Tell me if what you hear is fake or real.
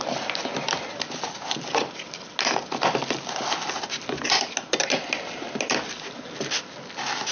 real